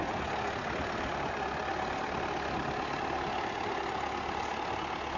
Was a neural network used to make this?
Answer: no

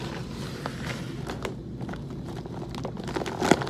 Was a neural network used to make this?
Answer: no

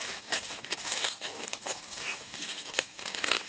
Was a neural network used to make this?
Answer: yes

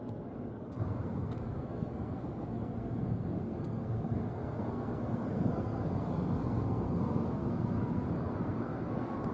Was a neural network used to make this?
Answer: yes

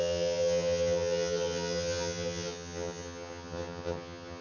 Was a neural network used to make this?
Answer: yes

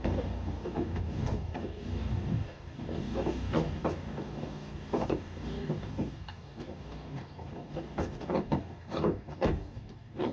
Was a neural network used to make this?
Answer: yes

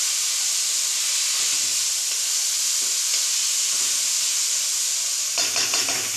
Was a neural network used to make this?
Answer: no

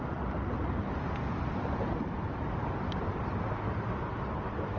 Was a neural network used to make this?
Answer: no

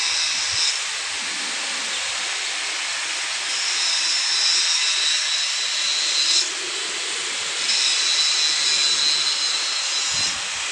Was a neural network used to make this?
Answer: no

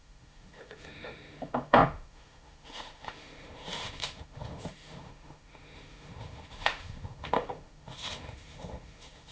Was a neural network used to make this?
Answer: yes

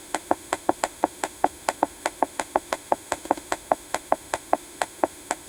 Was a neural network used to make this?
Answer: yes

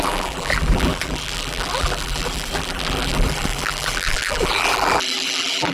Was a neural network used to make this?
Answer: yes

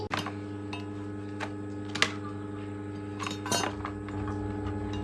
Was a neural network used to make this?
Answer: no